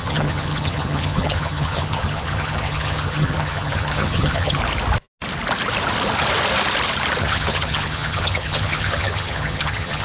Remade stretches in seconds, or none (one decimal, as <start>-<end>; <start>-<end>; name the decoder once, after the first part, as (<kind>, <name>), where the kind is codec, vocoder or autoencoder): 0.0-4.6 (vocoder, HiFi-GAN); 7.2-10.0